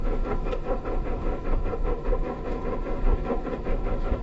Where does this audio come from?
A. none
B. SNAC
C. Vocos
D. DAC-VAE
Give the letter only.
D